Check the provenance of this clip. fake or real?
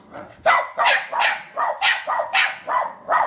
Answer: fake